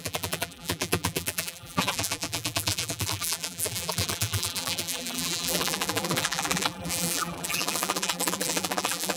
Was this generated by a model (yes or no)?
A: yes